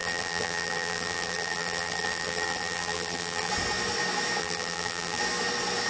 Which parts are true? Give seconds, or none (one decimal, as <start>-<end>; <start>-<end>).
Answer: 3.5-4.4; 5.2-5.9